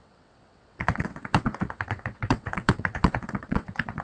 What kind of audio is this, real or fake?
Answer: fake